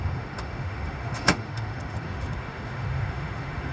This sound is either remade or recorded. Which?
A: remade